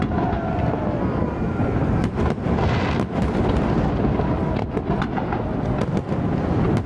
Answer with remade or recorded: recorded